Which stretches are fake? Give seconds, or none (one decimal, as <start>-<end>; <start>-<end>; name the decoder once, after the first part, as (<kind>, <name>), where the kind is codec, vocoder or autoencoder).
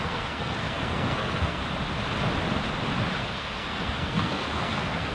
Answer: 0.0-1.6 (codec, SNAC); 3.2-5.1